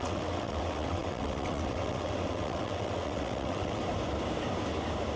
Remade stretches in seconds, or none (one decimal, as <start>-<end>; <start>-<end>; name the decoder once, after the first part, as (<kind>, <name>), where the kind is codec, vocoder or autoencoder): 0.0-3.8 (vocoder, WaveNeXt)